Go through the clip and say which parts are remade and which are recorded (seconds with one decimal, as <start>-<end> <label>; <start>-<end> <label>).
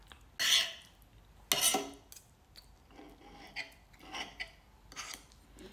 0.0-5.7 recorded